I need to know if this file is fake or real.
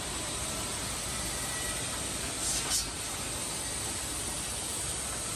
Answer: real